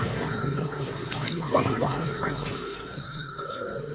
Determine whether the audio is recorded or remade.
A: remade